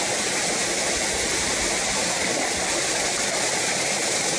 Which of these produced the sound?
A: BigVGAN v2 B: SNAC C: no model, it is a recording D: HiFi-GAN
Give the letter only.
C